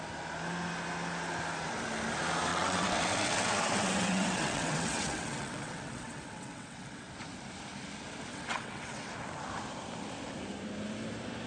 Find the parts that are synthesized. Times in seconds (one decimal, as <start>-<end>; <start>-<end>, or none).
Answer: 2.5-7.1; 8.3-9.1